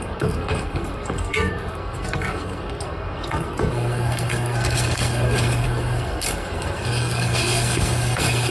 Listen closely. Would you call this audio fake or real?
fake